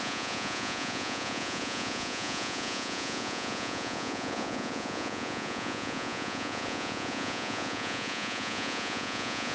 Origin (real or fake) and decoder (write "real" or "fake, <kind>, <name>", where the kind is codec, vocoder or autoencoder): fake, vocoder, Vocos